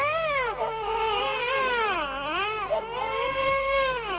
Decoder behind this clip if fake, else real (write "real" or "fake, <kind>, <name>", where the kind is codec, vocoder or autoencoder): fake, codec, SNAC